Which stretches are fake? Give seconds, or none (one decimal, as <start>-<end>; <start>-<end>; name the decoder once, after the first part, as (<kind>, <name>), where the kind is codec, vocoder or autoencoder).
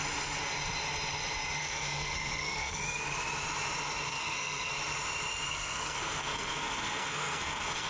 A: 1.6-3.0 (codec, SNAC); 4.1-4.7; 5.5-7.9